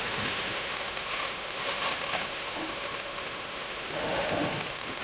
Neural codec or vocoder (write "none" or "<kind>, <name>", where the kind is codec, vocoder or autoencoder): autoencoder, DAC-VAE